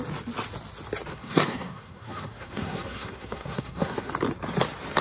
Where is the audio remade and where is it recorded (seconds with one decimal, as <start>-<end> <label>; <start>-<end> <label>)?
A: 0.0-1.1 recorded; 1.1-4.1 remade; 4.1-5.0 recorded